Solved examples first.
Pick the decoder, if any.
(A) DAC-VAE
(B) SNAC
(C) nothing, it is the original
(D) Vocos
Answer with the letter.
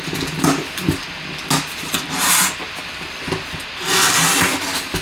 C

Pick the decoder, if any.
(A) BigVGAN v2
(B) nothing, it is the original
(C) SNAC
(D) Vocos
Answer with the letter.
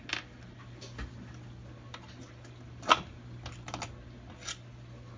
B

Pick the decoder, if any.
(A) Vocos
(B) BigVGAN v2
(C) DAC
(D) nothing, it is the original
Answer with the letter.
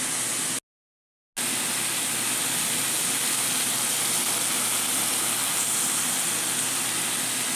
D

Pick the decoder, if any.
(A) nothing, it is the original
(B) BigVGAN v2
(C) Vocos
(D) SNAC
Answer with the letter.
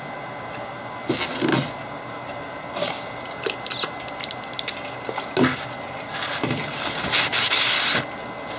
A